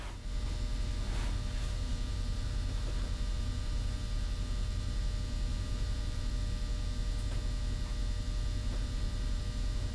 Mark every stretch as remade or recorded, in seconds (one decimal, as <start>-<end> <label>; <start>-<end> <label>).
0.0-1.9 recorded; 1.9-5.0 remade; 5.0-5.5 recorded; 5.5-6.3 remade; 6.3-8.6 recorded; 8.6-9.4 remade; 9.4-9.9 recorded

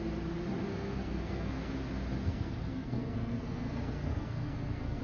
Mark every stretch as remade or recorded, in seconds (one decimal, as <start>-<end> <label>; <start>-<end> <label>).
0.0-0.7 recorded; 0.7-1.7 remade; 1.7-2.2 recorded; 2.2-5.0 remade

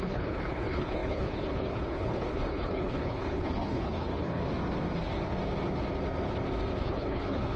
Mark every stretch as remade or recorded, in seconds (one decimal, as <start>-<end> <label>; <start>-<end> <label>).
0.0-4.4 remade; 4.4-6.8 recorded; 6.8-7.6 remade